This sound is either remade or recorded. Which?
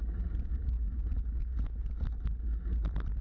recorded